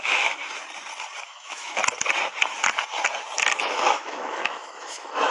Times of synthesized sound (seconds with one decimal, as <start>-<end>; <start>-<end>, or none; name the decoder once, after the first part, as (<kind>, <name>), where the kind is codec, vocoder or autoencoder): 0.0-0.4 (autoencoder, DAC-VAE); 1.2-1.8; 3.6-5.3